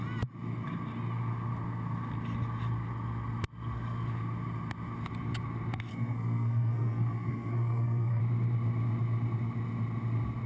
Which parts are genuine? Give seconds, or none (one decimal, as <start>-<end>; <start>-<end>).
0.0-5.9; 8.2-10.5

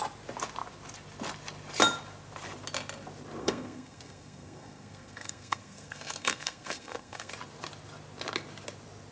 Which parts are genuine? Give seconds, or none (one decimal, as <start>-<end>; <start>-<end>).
0.0-3.4; 7.3-9.1

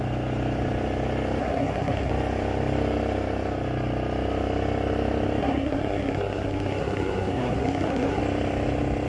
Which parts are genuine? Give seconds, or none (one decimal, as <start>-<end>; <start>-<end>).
0.0-1.4; 2.1-5.4; 8.2-9.1

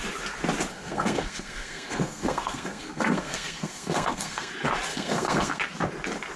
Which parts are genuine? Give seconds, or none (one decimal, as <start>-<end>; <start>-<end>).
0.0-0.7; 4.5-4.9; 5.6-6.4